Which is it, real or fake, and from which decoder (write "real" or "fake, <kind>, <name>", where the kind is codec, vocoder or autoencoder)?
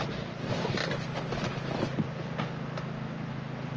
real